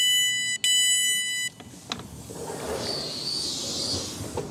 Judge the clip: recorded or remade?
recorded